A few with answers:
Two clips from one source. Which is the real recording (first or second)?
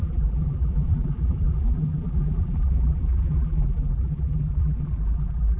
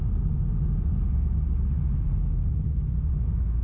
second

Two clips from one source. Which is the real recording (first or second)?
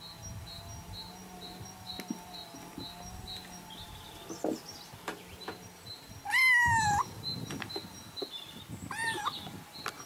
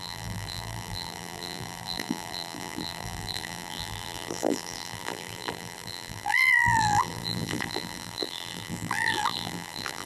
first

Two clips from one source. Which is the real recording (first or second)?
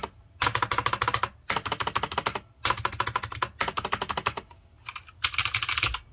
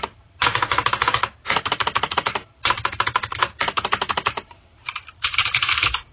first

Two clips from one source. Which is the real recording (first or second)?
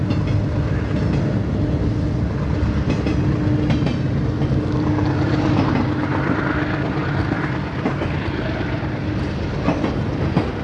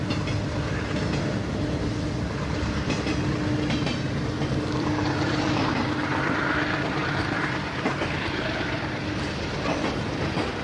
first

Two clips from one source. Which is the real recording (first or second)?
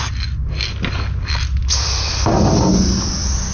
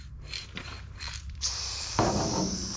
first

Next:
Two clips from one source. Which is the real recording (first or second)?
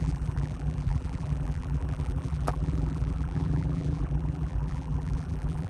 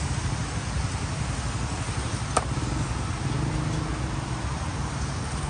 second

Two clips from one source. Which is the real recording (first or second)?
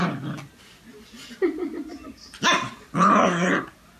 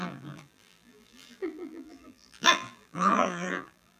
first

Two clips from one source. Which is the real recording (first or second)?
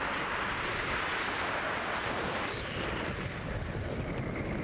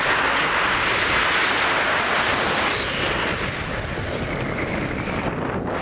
second